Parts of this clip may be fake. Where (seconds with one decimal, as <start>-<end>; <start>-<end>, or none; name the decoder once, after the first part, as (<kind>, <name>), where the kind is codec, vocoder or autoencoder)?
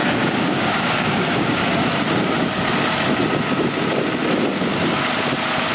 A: 0.0-1.6 (codec, DAC)